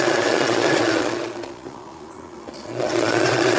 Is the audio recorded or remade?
remade